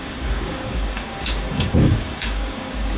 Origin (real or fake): fake